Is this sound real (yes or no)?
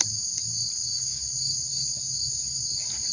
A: yes